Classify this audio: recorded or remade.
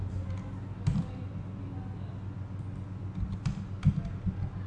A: recorded